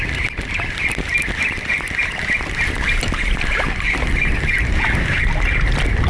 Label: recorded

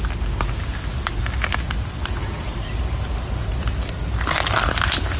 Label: recorded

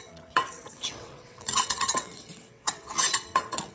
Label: remade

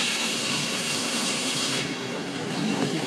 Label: remade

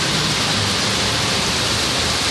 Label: recorded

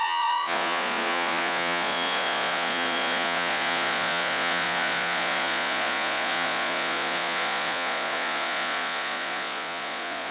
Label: remade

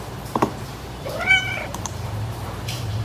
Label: remade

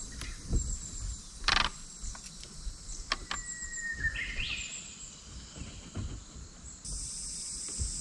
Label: recorded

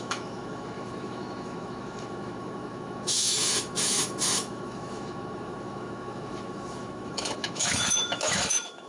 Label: remade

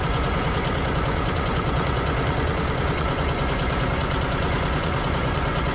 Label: remade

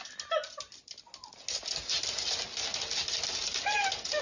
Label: recorded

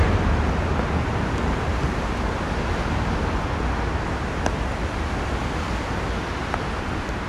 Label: recorded